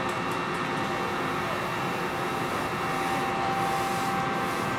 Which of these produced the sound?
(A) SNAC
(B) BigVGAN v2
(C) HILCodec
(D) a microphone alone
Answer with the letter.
D